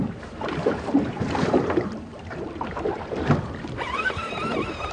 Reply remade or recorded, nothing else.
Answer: remade